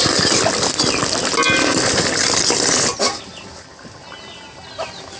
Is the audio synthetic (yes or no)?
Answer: no